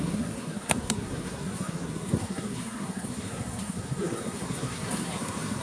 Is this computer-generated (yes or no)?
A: yes